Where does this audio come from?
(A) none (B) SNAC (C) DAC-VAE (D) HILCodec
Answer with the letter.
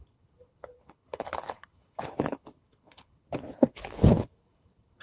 D